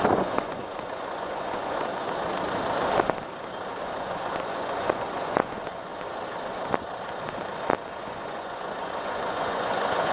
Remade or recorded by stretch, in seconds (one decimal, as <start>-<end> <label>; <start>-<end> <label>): 0.0-1.9 remade; 1.9-3.8 recorded; 3.8-5.9 remade; 5.9-8.0 recorded; 8.0-10.1 remade